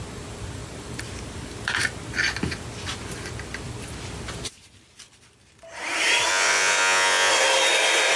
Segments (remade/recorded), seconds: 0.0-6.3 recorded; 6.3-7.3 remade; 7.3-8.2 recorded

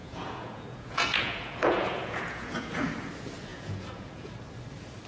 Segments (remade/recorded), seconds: 0.0-3.1 remade; 3.1-3.5 recorded; 3.5-4.3 remade; 4.3-5.1 recorded